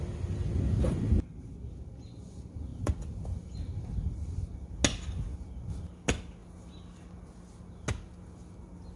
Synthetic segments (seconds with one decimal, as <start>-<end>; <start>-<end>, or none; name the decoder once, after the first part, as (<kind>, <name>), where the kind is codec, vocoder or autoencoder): none